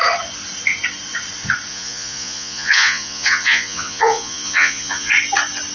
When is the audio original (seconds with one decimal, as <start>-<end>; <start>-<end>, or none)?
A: 0.0-1.7; 5.1-5.7